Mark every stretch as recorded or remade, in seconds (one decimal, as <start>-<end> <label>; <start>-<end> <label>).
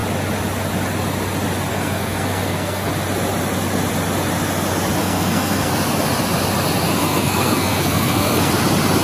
0.0-1.7 recorded; 1.7-2.9 remade; 2.9-5.0 recorded; 5.0-5.7 remade; 5.7-7.0 recorded; 7.0-8.5 remade; 8.5-9.0 recorded